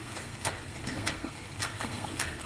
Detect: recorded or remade remade